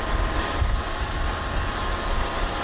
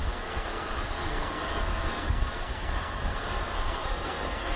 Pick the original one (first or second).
first